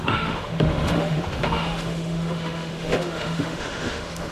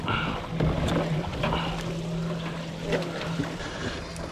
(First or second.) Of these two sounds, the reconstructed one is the first